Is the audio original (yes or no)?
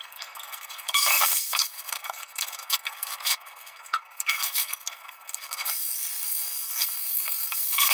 no